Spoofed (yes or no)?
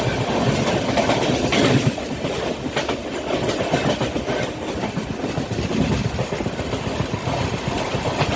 no